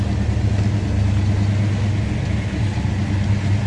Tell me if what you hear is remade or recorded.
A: recorded